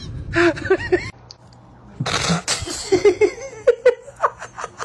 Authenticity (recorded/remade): recorded